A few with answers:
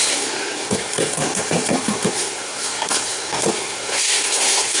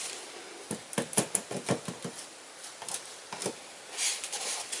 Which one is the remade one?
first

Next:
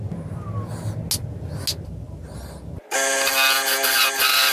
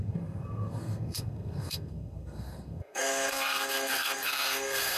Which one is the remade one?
second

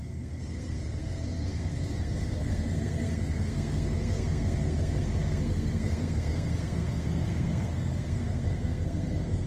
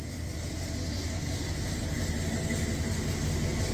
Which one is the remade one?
first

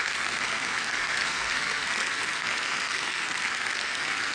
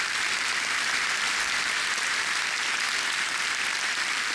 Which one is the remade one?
first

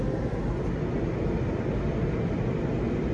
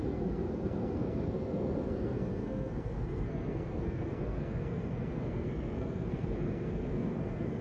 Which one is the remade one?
second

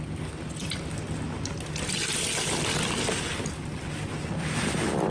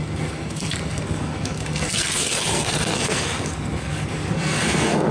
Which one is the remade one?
second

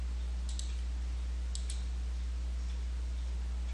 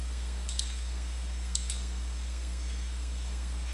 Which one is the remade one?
second